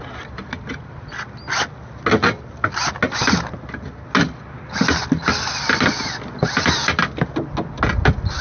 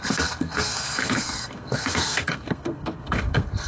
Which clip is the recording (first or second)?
first